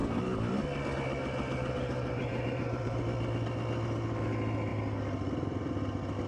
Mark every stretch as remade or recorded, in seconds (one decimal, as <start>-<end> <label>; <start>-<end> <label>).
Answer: 0.0-2.2 recorded; 2.2-3.0 remade; 3.0-6.3 recorded